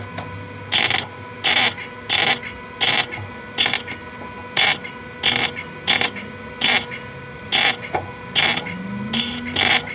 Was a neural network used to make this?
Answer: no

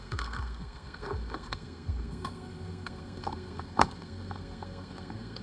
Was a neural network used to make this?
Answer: yes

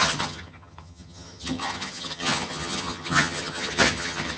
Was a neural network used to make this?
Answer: yes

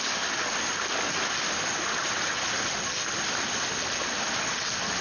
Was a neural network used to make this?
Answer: no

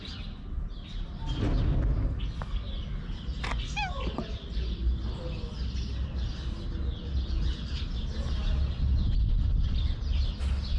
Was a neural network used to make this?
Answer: no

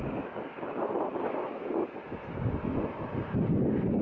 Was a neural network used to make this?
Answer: no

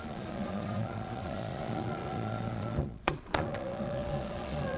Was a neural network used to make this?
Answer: yes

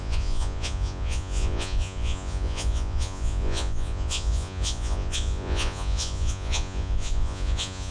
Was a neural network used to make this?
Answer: yes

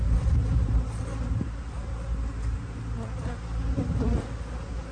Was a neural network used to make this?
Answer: no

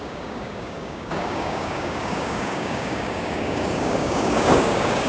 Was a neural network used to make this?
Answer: yes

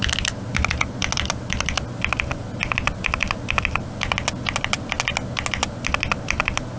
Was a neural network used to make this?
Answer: no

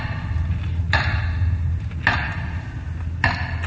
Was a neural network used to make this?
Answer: no